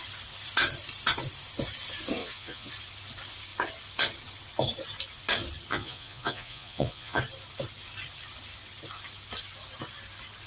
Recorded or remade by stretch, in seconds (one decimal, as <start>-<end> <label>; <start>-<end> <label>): 0.0-2.2 recorded; 2.2-2.7 remade; 2.7-5.7 recorded; 5.7-7.2 remade; 7.2-10.5 recorded